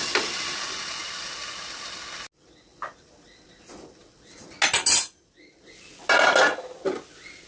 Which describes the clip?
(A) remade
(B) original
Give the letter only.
B